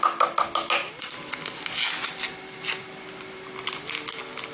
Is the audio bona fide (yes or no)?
yes